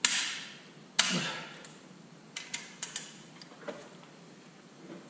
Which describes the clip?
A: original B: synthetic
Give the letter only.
A